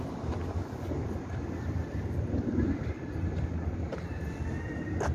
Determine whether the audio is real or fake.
real